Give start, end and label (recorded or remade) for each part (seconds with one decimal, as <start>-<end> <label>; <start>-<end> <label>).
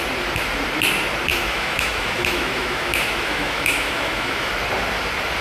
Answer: 0.0-1.3 recorded; 1.3-4.5 remade; 4.5-5.4 recorded